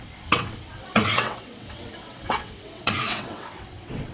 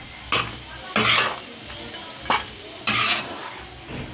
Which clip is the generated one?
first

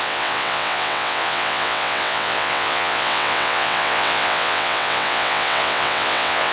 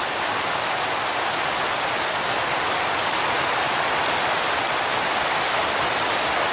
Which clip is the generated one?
first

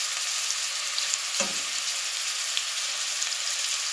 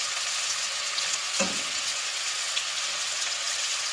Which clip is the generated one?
second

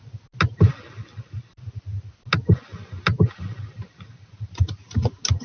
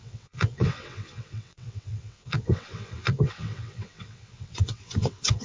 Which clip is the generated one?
second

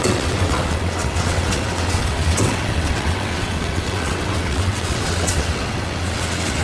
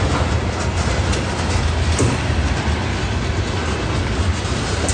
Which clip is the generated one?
first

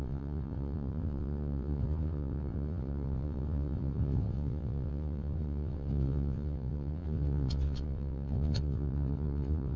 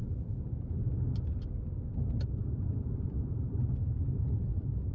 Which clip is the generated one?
first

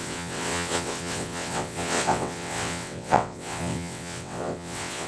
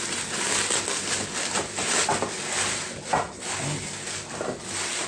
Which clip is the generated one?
first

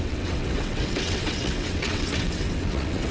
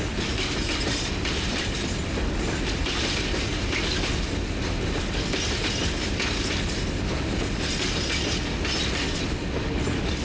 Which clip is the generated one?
first